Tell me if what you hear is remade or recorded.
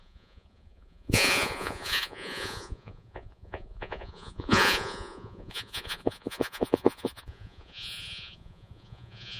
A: remade